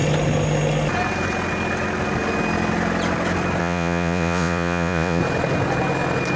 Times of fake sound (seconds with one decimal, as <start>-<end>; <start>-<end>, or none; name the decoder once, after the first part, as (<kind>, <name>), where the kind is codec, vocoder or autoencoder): 3.6-5.2 (vocoder, Vocos)